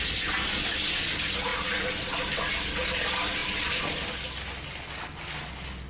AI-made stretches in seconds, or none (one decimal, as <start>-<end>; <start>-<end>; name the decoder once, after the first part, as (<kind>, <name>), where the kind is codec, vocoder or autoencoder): 3.4-4.9 (vocoder, BigVGAN v2)